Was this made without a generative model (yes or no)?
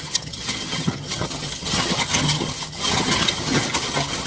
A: no